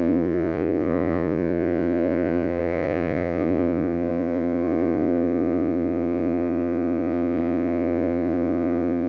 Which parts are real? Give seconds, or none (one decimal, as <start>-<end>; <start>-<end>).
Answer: none